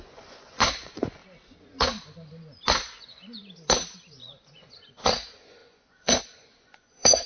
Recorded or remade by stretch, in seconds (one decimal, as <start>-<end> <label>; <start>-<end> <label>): 0.0-1.2 remade; 1.2-3.0 recorded; 3.0-3.4 remade; 3.4-4.1 recorded; 4.1-7.3 remade